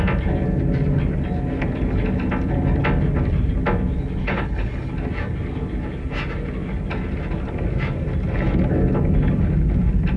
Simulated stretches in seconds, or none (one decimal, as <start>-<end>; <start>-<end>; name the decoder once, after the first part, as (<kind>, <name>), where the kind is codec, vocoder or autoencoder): 4.2-4.9 (codec, HILCodec)

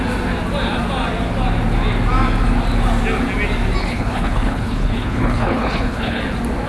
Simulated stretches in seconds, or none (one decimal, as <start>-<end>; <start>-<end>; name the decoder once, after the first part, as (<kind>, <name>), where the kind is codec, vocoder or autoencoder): 3.8-6.2 (codec, HILCodec)

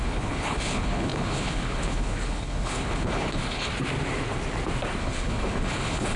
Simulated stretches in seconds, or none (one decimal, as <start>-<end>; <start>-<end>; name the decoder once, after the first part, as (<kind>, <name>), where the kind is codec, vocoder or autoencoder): 0.0-3.7 (codec, HILCodec); 5.0-6.2

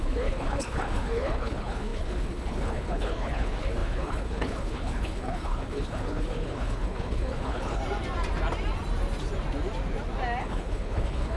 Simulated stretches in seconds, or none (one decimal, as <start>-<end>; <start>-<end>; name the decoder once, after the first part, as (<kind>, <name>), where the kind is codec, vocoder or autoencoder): 0.0-7.8 (codec, HILCodec); 10.4-11.4